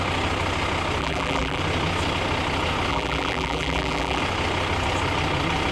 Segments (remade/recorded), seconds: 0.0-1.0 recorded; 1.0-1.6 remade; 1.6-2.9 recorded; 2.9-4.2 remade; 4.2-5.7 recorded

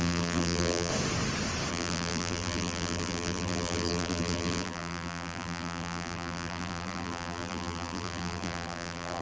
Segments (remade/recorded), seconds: 0.0-0.9 remade; 0.9-1.7 recorded; 1.7-9.2 remade

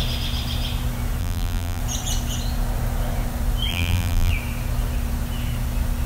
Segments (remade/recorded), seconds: 0.0-1.2 recorded; 1.2-1.8 remade; 1.8-3.7 recorded; 3.7-4.3 remade; 4.3-6.1 recorded

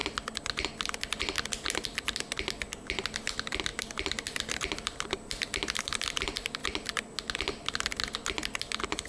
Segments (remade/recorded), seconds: 0.0-9.1 recorded

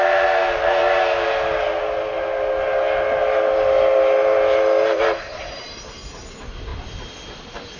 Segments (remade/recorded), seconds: 0.0-7.8 recorded

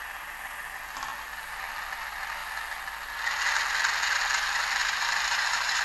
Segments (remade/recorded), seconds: 0.0-4.8 recorded; 4.8-5.8 remade